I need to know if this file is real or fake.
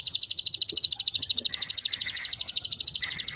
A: fake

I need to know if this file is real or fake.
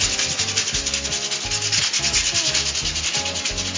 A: real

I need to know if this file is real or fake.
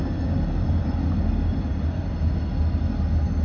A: real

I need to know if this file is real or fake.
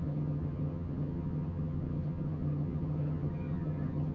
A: fake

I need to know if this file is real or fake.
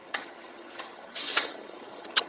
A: fake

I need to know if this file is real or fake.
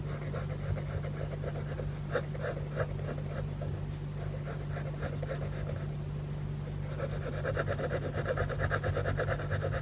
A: real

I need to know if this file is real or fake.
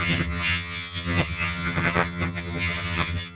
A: fake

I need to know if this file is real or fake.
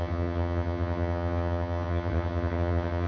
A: fake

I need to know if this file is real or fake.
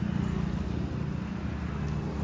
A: real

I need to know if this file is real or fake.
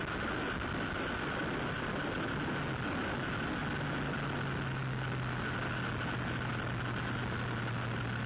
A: real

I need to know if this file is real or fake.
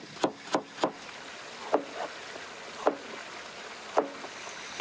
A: real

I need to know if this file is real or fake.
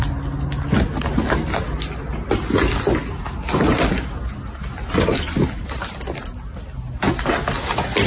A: real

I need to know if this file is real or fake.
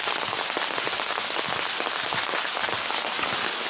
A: real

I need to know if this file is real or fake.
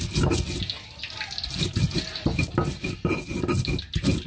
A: real